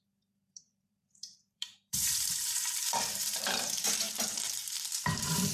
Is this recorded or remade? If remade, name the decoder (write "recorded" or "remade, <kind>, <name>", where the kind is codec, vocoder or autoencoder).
remade, vocoder, BigVGAN v2